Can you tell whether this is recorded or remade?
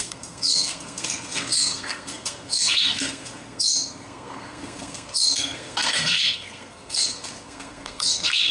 remade